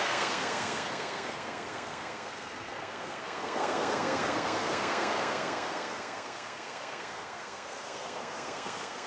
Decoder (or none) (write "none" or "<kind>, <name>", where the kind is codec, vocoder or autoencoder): codec, SNAC